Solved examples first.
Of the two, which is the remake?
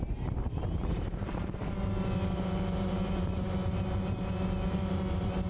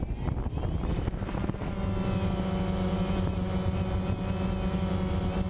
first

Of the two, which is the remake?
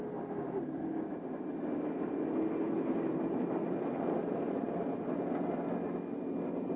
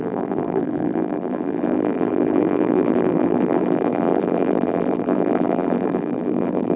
second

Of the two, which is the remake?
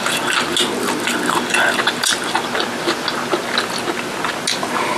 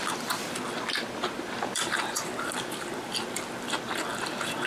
second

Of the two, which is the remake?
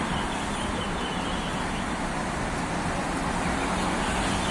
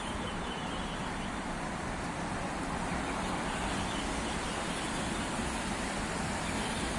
second